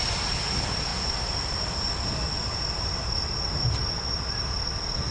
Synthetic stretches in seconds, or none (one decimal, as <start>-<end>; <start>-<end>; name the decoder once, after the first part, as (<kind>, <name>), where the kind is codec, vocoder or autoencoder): none